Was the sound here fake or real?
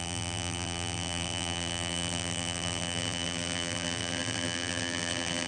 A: fake